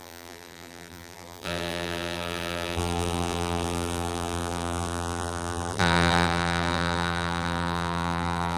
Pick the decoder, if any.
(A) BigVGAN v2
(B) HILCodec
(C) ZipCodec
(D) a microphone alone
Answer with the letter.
A